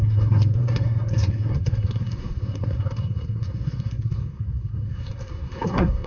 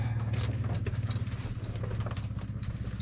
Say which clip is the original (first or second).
second